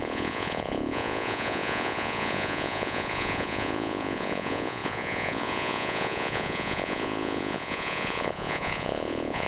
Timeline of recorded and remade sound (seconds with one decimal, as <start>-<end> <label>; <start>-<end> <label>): 0.0-9.5 remade